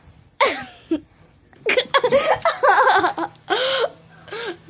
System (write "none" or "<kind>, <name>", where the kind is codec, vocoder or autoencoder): vocoder, BigVGAN v2